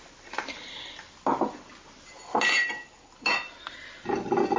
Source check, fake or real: real